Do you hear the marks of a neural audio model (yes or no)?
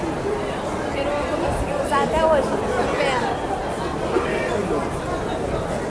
no